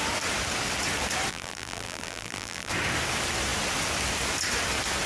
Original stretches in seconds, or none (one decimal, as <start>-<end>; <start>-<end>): 0.0-1.3; 2.7-5.1